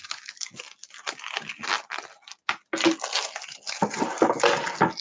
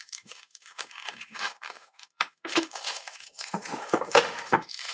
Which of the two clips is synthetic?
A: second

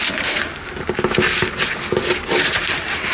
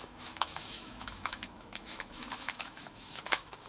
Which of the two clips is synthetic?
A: second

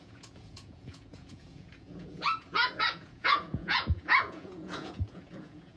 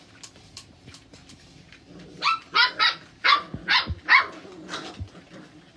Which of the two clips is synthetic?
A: first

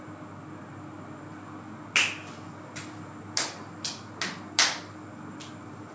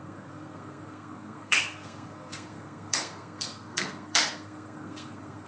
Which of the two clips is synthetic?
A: second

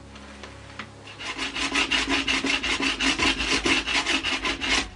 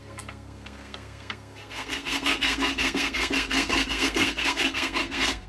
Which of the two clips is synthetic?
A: second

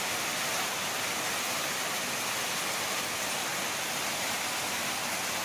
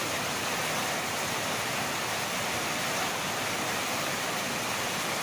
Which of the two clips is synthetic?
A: second